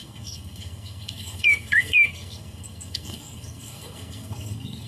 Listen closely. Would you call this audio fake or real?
fake